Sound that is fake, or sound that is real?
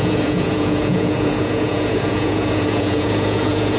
fake